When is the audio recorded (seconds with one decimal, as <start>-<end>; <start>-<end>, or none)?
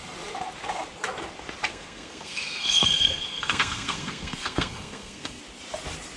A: 0.0-1.7; 5.4-6.2